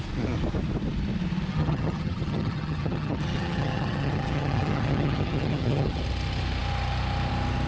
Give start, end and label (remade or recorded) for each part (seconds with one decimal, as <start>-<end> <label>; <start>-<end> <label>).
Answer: 0.0-1.5 recorded; 1.5-6.0 remade; 6.0-7.7 recorded